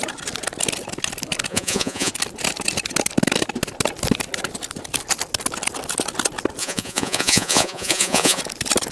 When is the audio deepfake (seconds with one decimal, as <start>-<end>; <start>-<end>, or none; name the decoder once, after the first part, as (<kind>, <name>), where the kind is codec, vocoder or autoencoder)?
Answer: 1.5-2.1 (vocoder, Vocos); 6.6-8.4